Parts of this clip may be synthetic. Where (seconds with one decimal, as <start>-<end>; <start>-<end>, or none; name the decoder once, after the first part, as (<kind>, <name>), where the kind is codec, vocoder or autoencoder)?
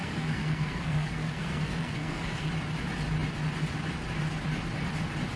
0.0-2.5 (codec, SNAC)